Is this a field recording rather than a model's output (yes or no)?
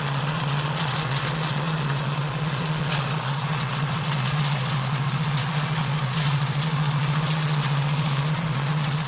no